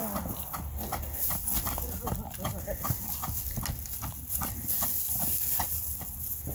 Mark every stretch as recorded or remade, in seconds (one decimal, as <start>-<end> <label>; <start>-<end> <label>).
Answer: 0.0-6.5 recorded